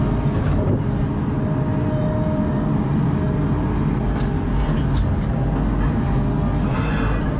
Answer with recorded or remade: recorded